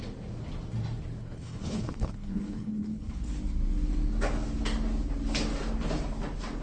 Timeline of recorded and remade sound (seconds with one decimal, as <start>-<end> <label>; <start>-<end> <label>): 0.0-1.2 recorded; 1.2-3.3 remade; 3.3-6.6 recorded